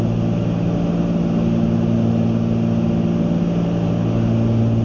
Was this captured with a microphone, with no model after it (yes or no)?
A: yes